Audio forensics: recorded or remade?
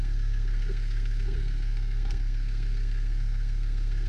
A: remade